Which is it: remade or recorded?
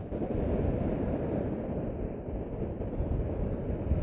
recorded